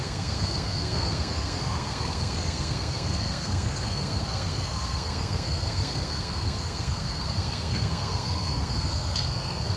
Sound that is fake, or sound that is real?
fake